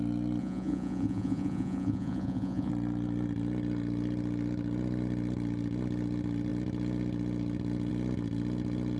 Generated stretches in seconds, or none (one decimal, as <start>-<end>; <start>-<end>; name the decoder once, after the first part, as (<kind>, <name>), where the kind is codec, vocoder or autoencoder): 0.4-2.7 (vocoder, Vocos)